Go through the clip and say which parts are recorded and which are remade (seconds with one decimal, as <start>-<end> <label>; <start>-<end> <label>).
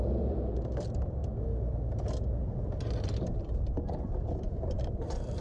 0.0-1.2 remade; 1.2-3.0 recorded; 3.0-5.4 remade